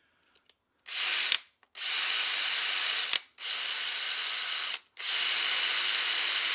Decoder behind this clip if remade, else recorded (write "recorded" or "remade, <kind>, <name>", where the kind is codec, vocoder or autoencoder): recorded